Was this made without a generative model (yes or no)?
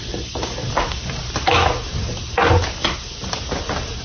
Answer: yes